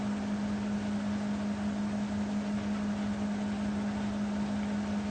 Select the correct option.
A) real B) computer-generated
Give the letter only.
A